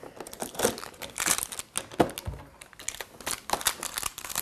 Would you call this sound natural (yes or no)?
yes